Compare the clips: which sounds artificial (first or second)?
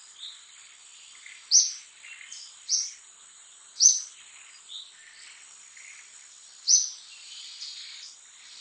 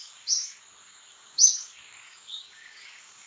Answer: second